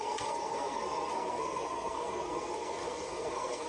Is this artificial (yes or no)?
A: yes